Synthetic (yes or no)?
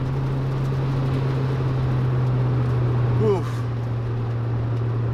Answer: no